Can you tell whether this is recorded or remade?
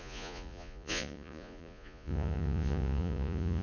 remade